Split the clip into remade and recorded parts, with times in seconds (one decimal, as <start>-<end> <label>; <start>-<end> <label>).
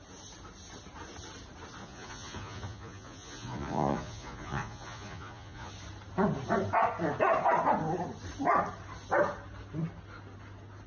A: 0.0-1.8 recorded; 1.8-5.7 remade; 5.7-10.9 recorded